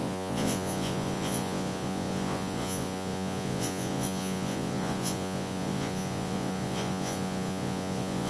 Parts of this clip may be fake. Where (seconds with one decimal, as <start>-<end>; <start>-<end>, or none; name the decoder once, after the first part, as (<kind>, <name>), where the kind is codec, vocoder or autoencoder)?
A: 0.0-8.3 (vocoder, Vocos)